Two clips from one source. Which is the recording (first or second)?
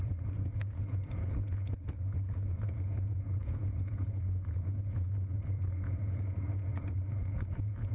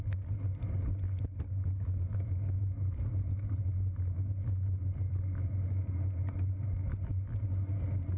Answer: second